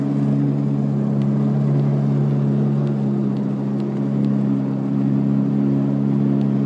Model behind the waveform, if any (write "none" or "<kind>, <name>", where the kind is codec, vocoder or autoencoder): none